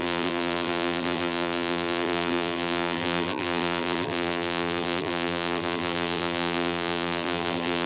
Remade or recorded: remade